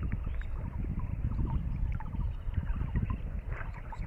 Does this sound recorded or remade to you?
remade